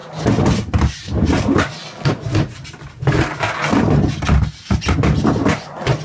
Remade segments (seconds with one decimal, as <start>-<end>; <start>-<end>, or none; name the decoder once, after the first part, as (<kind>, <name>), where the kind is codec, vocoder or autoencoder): none